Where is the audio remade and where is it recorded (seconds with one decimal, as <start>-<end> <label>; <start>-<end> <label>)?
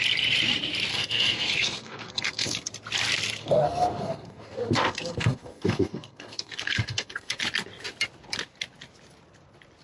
0.0-0.9 recorded; 0.9-2.7 remade; 2.7-3.4 recorded; 3.4-7.4 remade; 7.4-9.8 recorded